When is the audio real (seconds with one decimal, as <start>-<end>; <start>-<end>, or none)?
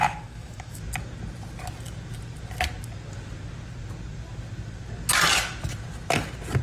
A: 0.8-6.6